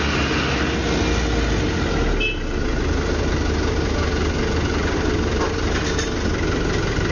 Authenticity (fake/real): real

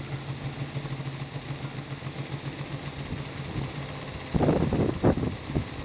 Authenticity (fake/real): real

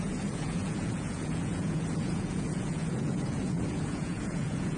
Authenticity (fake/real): fake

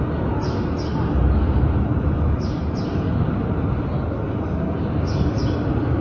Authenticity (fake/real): real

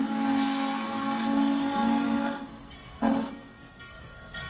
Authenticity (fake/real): fake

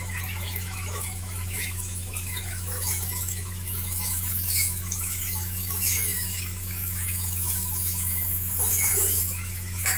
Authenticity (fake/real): fake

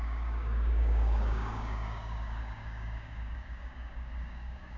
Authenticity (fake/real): fake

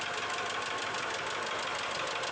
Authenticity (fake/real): real